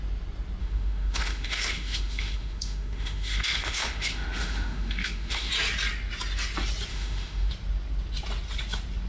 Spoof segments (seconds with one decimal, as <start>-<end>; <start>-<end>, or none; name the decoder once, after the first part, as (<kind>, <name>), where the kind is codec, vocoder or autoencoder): 0.6-5.5 (autoencoder, DAC-VAE); 6.9-7.5